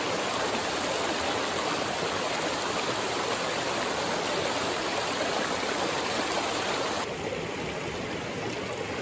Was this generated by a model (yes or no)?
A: no